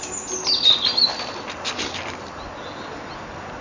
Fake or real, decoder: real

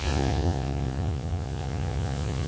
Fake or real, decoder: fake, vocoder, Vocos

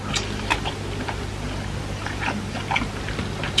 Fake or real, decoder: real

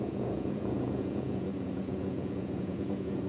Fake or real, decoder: fake, vocoder, Vocos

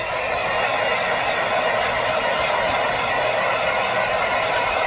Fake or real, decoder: real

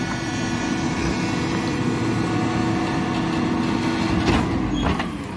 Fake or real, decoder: real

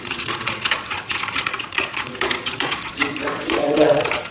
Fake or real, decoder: fake, vocoder, Vocos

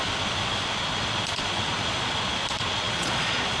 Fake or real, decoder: fake, vocoder, Vocos